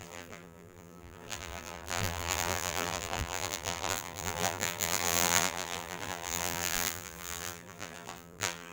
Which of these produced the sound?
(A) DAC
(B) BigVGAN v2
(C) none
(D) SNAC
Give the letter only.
B